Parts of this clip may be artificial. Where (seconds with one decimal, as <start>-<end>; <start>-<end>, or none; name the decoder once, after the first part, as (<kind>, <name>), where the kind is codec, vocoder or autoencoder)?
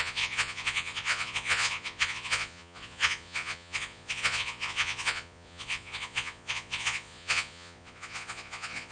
0.0-8.9 (vocoder, Vocos)